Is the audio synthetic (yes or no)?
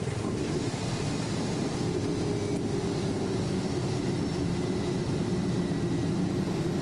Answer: no